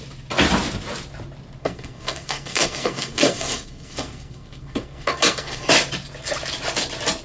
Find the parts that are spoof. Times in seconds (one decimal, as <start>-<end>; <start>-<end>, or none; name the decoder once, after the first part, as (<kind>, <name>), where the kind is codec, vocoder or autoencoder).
1.6-5.7 (codec, SNAC)